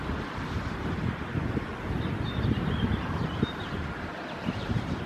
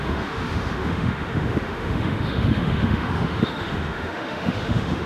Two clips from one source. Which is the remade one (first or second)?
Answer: second